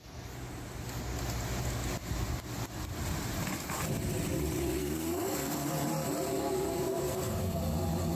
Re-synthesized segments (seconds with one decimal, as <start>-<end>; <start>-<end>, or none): 4.8-5.7; 6.7-7.6